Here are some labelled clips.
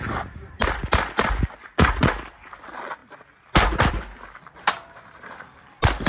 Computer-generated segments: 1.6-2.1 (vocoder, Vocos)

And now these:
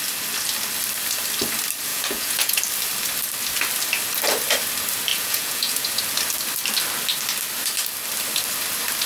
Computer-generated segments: 1.9-2.6 (vocoder, Vocos); 5.1-6.0

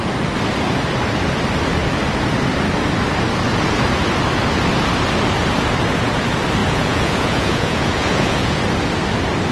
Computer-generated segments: 6.6-8.6 (vocoder, Vocos)

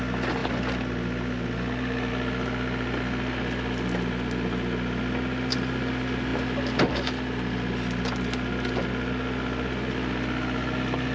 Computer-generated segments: none